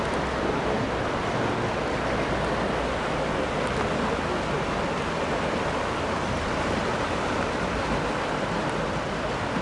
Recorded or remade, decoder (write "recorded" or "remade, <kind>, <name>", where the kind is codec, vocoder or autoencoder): recorded